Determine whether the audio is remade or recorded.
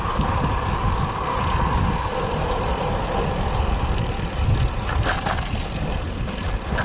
recorded